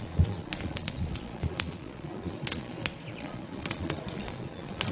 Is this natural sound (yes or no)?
no